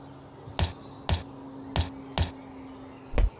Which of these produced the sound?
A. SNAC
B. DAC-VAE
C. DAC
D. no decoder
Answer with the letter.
D